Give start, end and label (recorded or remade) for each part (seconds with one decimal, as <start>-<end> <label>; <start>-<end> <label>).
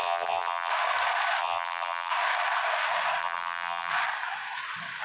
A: 0.0-0.7 remade; 0.7-1.4 recorded; 1.4-2.1 remade; 2.1-3.2 recorded; 3.2-3.9 remade; 3.9-5.0 recorded